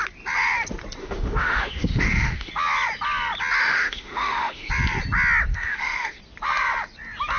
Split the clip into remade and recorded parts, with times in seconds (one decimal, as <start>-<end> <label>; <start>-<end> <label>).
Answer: 0.0-1.0 recorded; 1.0-2.5 remade; 2.5-3.6 recorded; 3.6-4.7 remade; 4.7-5.5 recorded; 5.5-6.2 remade; 6.2-7.4 recorded